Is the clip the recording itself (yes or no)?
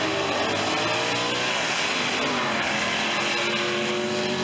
yes